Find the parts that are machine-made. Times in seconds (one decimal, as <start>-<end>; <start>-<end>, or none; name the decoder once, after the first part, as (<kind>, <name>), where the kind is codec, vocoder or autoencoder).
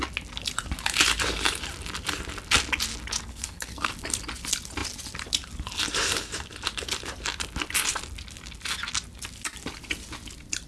3.3-3.9 (codec, SNAC)